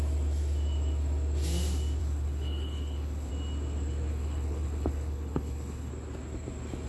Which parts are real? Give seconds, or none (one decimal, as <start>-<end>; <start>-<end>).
0.0-2.0; 3.3-4.1; 5.9-6.9